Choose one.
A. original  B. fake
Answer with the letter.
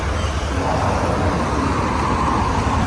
A